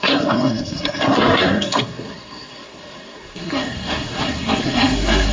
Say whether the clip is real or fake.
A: fake